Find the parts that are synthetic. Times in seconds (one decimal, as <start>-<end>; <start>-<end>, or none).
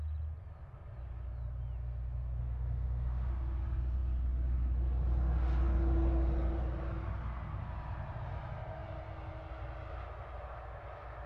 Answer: 2.4-3.3